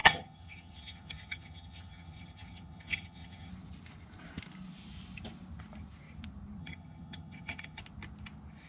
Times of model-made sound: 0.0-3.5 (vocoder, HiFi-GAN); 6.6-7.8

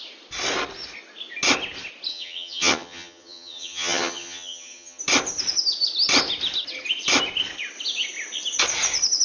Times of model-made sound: 2.1-5.0 (vocoder, HiFi-GAN)